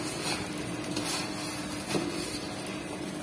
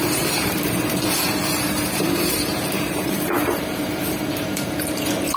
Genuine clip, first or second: first